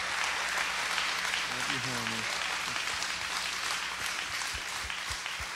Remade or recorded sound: recorded